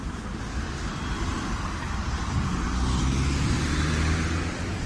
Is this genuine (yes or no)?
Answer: yes